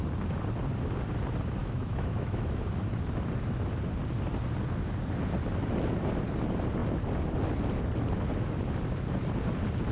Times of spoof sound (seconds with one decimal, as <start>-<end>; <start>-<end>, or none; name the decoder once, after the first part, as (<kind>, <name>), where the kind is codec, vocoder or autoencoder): 1.6-2.6 (autoencoder, DAC-VAE)